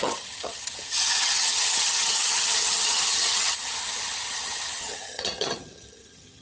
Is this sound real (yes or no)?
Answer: no